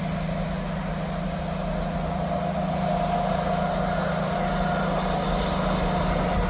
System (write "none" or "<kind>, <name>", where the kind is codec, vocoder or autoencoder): none